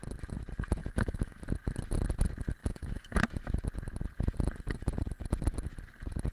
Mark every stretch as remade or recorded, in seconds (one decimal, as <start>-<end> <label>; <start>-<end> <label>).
0.0-0.8 recorded; 0.8-1.4 remade; 1.4-2.6 recorded; 2.6-3.2 remade; 3.2-6.3 recorded